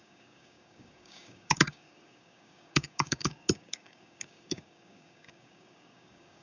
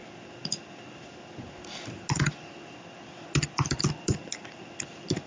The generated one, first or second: first